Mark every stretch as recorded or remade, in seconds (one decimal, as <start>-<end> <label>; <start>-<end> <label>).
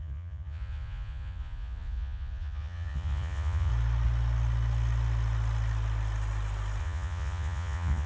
0.0-3.7 remade; 3.7-6.8 recorded; 6.8-8.1 remade